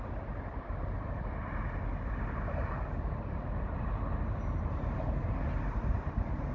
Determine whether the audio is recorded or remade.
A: recorded